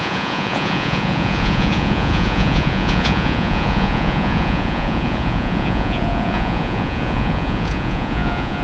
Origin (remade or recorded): remade